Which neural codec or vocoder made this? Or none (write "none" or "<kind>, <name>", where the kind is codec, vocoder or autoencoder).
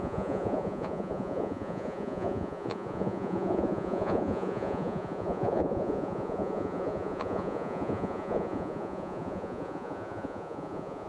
vocoder, Vocos